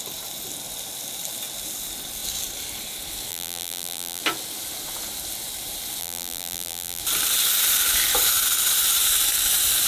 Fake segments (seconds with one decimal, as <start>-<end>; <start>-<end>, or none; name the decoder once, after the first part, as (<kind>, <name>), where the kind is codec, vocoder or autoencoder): 3.3-4.2 (vocoder, BigVGAN v2); 6.0-7.0